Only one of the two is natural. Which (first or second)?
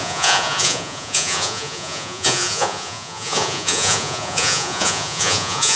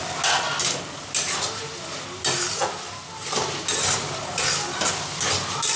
second